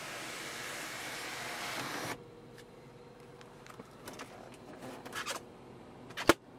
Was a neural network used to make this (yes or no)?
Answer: no